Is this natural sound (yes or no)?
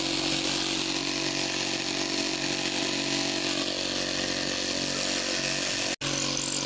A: yes